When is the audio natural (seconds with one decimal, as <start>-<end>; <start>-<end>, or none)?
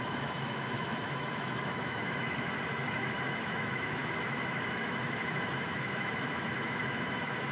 none